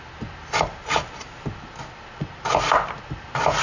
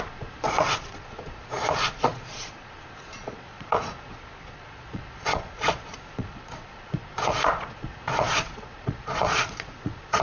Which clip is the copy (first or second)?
second